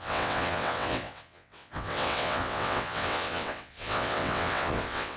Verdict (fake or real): fake